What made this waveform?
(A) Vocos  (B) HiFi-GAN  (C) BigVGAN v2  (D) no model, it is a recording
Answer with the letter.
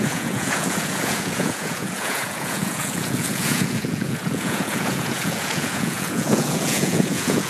A